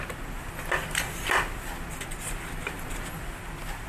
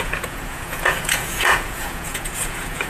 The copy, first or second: second